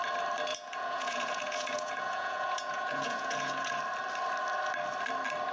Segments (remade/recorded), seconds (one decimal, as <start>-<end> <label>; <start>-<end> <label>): 0.0-0.5 recorded; 0.5-3.8 remade; 3.8-5.5 recorded